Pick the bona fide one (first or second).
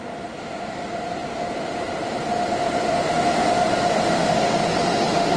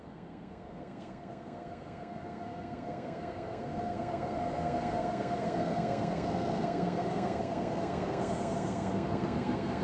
first